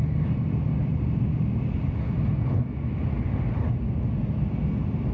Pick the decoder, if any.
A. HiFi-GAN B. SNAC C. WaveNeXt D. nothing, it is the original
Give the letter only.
D